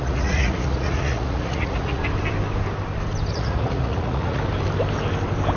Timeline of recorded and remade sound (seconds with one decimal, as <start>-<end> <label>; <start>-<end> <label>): 0.0-2.0 remade; 2.0-3.3 recorded; 3.3-4.4 remade; 4.4-5.6 recorded